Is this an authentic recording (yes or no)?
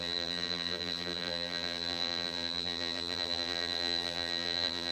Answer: no